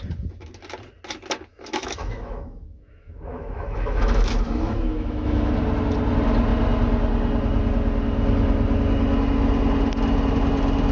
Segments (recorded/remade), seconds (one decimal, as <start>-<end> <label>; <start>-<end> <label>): 0.0-1.5 recorded; 1.5-5.5 remade; 5.5-10.9 recorded